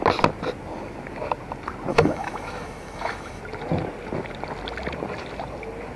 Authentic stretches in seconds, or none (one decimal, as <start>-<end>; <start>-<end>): 0.0-1.9; 3.4-6.0

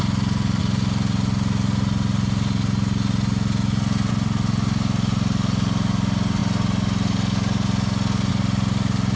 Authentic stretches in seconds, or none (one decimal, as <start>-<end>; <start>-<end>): 0.0-9.2